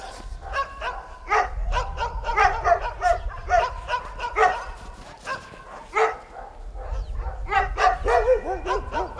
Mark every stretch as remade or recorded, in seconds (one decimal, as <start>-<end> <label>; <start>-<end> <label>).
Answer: 0.0-9.2 recorded